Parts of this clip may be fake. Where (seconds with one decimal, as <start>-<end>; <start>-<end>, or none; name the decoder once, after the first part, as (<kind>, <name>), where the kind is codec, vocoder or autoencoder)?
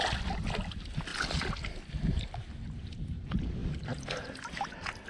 none